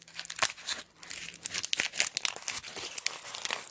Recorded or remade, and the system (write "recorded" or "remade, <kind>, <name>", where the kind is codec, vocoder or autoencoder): recorded